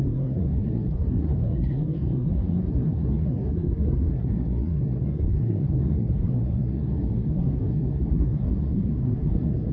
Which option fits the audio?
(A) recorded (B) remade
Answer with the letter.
B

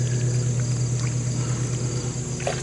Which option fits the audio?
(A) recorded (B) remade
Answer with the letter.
A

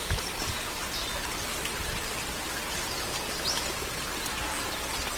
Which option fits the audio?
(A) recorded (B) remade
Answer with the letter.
A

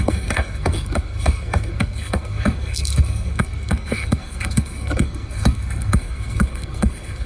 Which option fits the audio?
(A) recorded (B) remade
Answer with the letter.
B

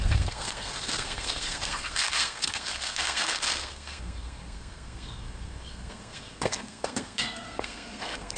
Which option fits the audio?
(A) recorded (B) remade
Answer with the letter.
B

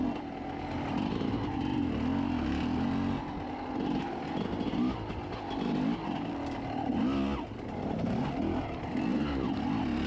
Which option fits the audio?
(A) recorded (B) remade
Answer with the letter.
A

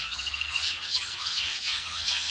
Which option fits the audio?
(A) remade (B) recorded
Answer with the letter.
A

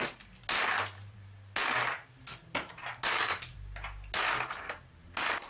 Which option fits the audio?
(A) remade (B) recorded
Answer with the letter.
B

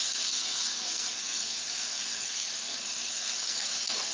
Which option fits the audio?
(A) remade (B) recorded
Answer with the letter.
A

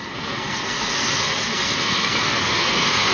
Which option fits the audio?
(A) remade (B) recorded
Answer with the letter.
A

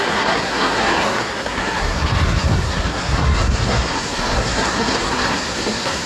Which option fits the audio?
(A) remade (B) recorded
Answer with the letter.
A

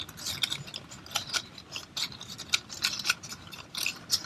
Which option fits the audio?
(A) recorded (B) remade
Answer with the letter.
A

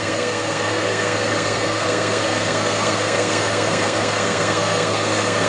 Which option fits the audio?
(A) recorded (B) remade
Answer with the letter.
B